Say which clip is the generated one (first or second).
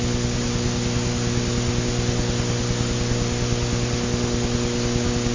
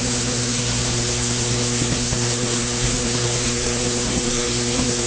second